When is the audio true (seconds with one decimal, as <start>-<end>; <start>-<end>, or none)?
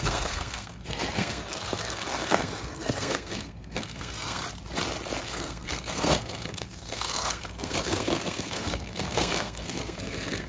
4.4-5.2